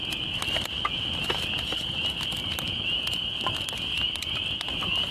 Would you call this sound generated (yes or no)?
no